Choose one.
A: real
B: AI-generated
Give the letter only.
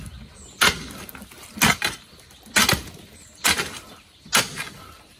A